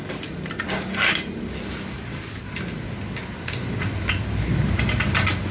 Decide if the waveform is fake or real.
real